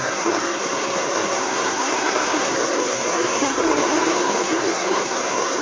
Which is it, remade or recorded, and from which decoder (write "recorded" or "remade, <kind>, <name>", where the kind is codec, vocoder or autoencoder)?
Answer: remade, codec, SNAC